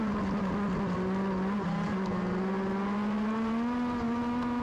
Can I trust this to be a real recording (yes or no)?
yes